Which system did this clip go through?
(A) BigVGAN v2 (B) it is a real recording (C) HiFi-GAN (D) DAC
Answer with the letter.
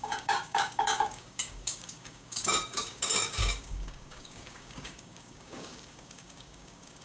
D